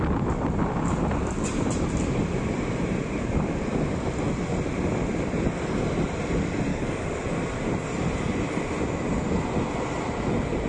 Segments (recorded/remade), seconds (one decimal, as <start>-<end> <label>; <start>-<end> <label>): 0.0-6.7 recorded; 6.7-7.3 remade; 7.3-10.7 recorded

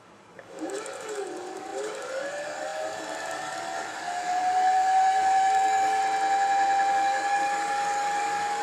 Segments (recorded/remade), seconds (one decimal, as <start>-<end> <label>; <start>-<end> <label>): 0.0-6.0 remade; 6.0-6.9 recorded; 6.9-8.6 remade

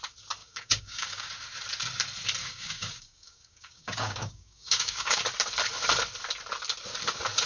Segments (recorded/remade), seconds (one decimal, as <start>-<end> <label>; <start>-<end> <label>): 0.0-0.4 recorded; 0.4-1.3 remade; 1.3-2.4 recorded; 2.4-5.2 remade; 5.2-7.5 recorded

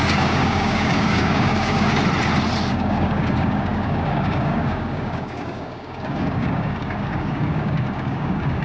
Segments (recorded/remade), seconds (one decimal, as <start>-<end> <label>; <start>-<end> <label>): 0.0-1.9 remade; 1.9-2.7 recorded; 2.7-8.6 remade

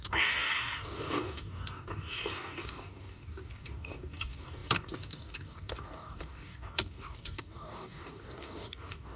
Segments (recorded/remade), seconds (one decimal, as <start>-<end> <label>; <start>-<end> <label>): 0.0-9.2 remade